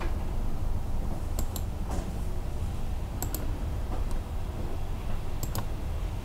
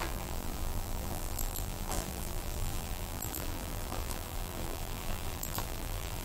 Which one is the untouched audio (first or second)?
first